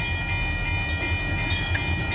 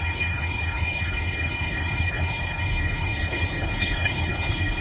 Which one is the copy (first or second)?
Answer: second